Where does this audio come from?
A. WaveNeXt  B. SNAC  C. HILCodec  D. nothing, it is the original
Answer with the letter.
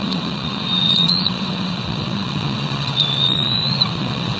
A